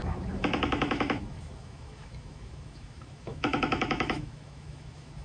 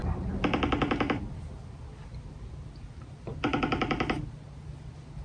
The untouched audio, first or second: second